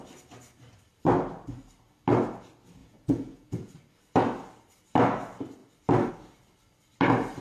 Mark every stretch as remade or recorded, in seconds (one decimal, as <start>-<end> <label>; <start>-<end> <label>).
0.0-2.8 recorded; 2.8-3.7 remade; 3.7-7.4 recorded